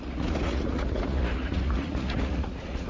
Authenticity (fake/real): fake